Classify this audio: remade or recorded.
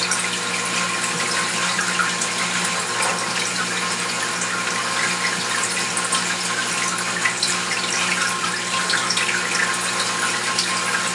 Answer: recorded